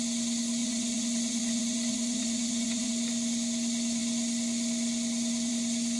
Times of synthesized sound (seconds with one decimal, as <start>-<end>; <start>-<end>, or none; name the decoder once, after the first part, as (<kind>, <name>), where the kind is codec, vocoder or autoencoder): 0.6-2.9 (vocoder, Vocos)